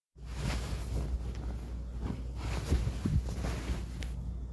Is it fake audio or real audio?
real